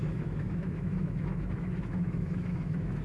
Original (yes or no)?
no